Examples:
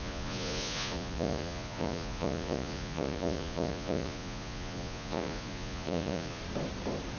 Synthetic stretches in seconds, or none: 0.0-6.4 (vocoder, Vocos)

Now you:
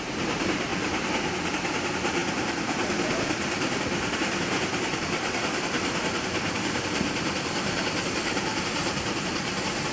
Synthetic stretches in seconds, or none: 0.0-0.7 (vocoder, BigVGAN v2); 1.5-9.9